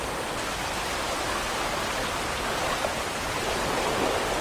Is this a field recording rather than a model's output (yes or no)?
yes